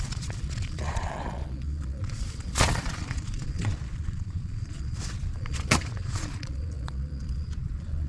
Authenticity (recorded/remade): remade